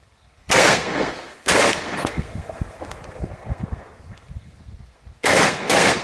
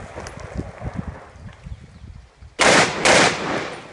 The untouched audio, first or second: second